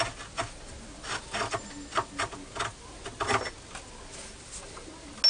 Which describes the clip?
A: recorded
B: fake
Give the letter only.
A